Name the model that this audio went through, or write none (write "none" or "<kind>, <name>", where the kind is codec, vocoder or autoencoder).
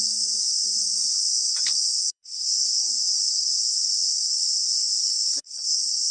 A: codec, HILCodec